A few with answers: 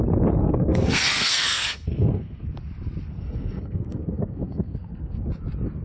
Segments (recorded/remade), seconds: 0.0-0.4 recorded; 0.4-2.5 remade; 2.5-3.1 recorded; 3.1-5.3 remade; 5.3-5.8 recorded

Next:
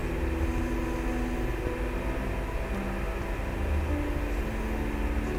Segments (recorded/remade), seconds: 0.0-5.4 recorded

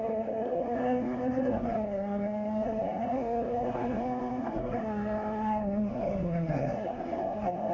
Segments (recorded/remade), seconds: 0.0-7.7 remade

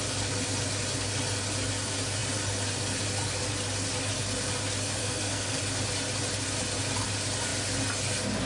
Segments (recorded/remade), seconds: 0.0-5.0 recorded; 5.0-5.6 remade; 5.6-8.5 recorded

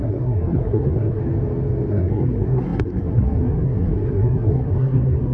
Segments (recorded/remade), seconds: 0.0-1.2 remade; 1.2-1.9 recorded; 1.9-5.3 remade

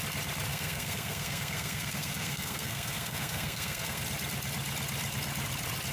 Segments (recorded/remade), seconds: 0.0-0.5 recorded; 0.5-4.0 remade; 4.0-5.9 recorded

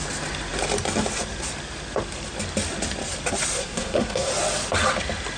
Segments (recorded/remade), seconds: 0.0-3.6 recorded; 3.6-4.3 remade; 4.3-5.4 recorded

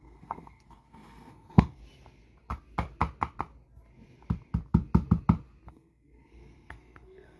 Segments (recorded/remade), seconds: 0.0-1.8 remade; 1.8-5.7 recorded; 5.7-7.4 remade